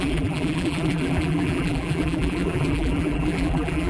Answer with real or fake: fake